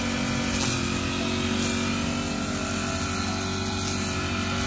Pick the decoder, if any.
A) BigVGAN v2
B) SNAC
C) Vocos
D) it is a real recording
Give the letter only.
D